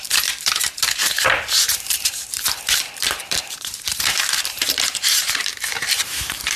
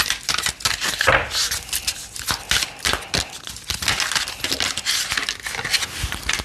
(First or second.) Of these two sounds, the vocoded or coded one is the first